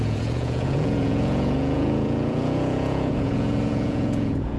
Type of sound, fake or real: fake